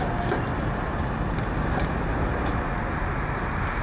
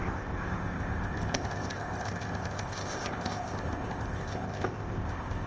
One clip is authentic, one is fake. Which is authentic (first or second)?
first